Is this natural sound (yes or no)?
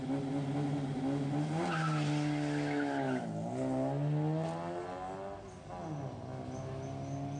yes